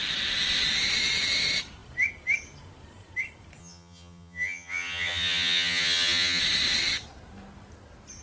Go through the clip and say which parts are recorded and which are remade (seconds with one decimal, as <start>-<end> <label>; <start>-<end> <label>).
0.0-3.6 recorded; 3.6-6.4 remade; 6.4-8.2 recorded